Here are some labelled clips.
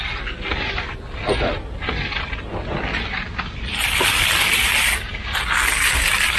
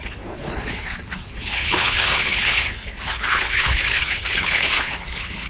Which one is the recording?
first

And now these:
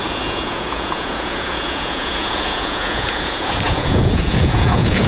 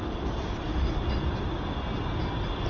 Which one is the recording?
second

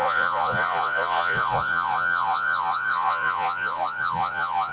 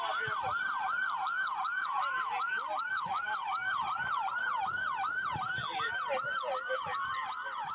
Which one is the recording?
second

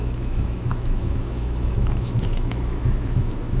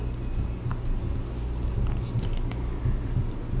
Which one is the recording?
second